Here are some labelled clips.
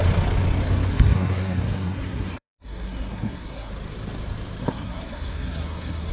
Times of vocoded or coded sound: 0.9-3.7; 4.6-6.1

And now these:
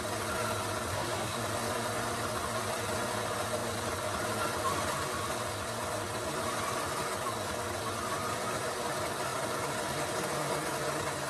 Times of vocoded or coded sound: 0.9-1.4